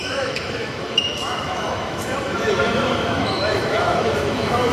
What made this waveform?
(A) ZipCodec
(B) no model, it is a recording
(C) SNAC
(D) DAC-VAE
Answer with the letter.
D